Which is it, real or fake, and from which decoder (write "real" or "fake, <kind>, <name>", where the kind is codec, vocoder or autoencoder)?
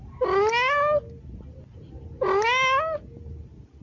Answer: real